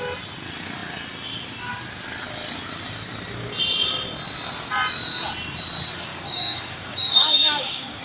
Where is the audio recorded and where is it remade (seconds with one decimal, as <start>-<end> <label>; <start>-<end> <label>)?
0.0-6.1 recorded; 6.1-8.0 remade